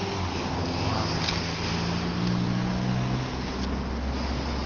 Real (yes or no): yes